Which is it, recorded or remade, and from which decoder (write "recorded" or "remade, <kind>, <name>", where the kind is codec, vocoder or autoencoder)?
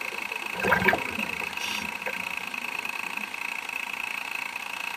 remade, vocoder, BigVGAN v2